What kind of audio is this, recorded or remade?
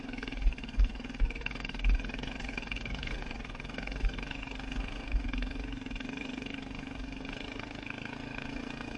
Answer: remade